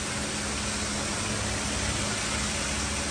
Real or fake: real